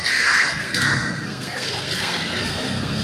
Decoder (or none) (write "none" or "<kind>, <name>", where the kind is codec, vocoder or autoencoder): codec, SNAC